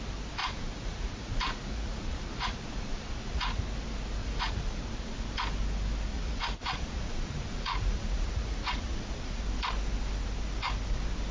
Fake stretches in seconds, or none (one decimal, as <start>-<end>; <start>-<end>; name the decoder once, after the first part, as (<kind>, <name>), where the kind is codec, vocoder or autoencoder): 0.4-3.6 (vocoder, Vocos); 4.2-4.8; 6.1-9.4